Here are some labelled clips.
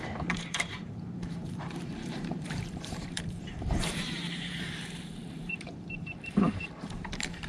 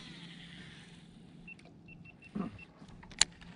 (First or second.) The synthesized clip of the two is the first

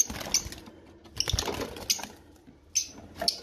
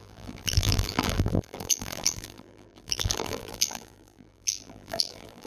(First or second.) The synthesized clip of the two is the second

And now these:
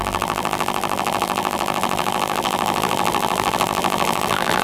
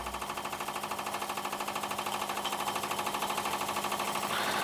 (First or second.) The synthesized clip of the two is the first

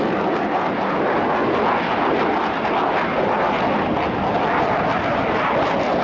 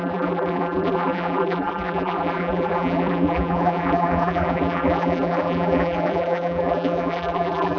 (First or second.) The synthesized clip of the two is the second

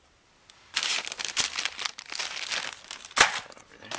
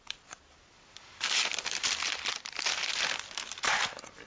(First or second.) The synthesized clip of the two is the second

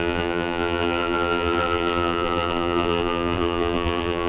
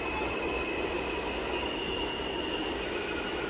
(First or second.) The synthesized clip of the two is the first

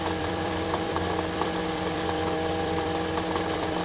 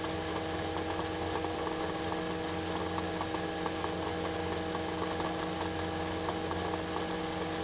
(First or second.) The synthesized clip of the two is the first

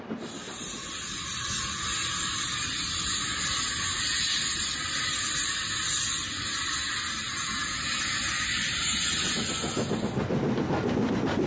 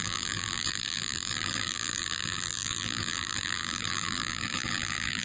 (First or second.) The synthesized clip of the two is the second